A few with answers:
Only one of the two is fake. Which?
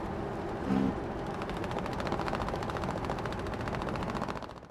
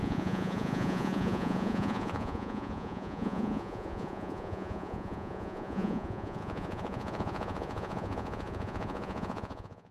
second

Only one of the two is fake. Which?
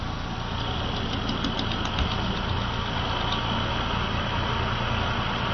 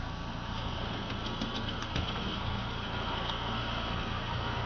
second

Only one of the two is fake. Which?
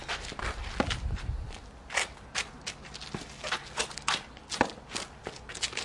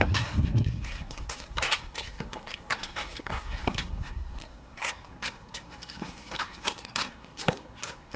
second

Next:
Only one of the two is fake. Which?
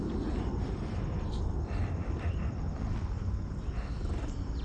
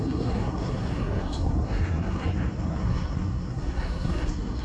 second